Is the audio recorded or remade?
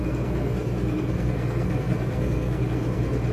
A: remade